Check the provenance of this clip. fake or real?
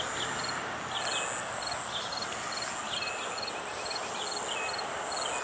real